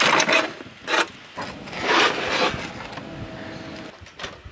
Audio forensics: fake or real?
real